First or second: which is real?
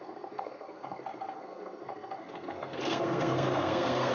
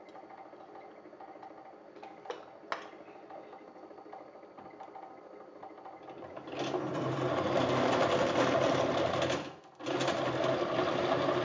second